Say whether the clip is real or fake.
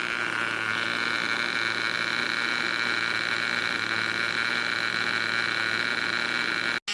real